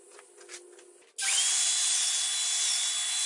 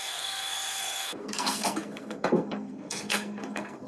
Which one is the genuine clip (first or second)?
first